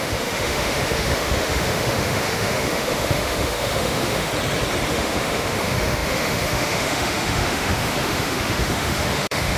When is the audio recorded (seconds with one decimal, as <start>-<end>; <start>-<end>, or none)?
4.3-4.9